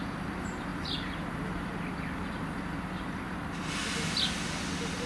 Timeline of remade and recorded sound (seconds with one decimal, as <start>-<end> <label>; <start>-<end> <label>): 0.0-5.1 recorded